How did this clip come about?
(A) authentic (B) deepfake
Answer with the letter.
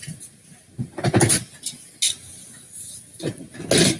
A